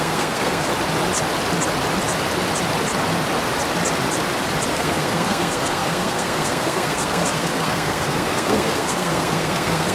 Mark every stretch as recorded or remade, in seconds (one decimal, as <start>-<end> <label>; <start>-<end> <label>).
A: 0.0-0.7 remade; 0.7-4.7 recorded; 4.7-9.9 remade